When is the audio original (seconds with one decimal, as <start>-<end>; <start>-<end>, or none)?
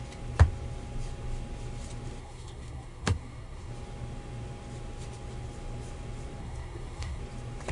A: 0.0-2.2; 3.7-6.4; 7.2-7.7